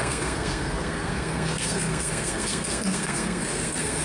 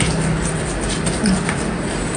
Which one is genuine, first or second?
second